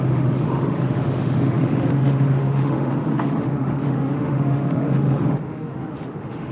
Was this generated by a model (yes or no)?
yes